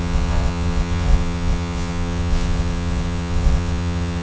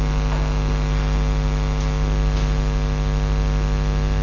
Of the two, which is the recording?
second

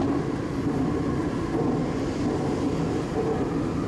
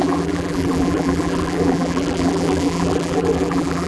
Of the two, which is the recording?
first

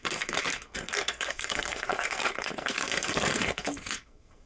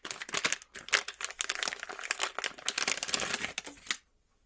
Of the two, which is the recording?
second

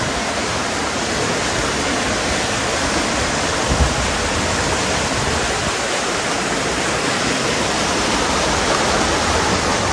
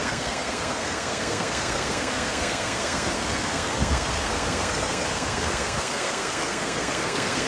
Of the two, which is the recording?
first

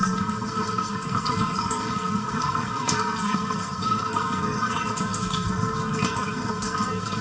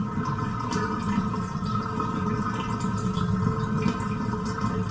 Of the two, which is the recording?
second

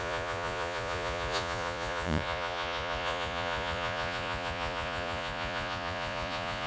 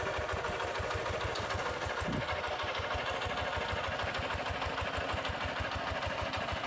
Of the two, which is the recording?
second